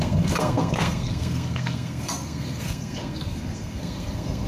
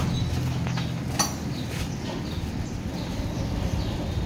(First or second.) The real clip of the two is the second